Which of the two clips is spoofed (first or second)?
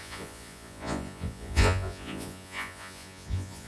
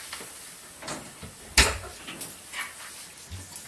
first